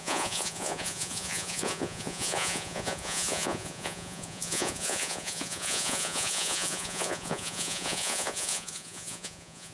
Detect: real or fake fake